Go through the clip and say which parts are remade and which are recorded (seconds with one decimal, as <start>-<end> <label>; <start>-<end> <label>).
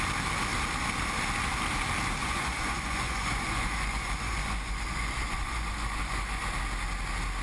0.0-2.2 recorded; 2.2-6.4 remade; 6.4-7.4 recorded